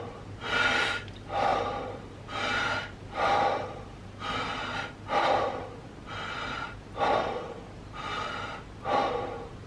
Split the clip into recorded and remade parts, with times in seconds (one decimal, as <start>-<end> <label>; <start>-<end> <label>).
0.0-9.7 recorded